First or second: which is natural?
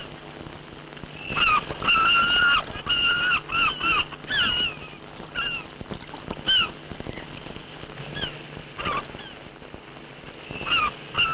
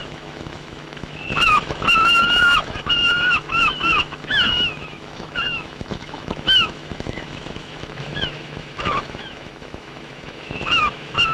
first